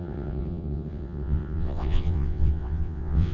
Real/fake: fake